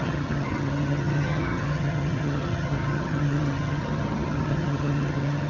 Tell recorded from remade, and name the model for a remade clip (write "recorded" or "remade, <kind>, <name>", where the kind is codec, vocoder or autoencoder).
remade, vocoder, HiFi-GAN